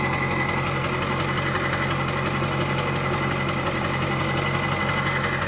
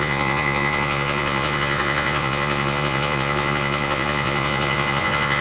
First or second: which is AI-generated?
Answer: second